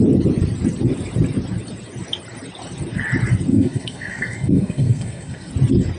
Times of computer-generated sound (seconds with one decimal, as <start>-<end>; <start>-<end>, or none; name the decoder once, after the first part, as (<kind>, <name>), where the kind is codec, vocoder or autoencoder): 3.5-5.5 (codec, SNAC)